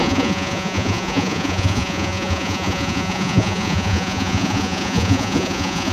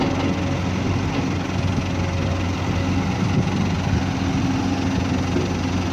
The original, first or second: second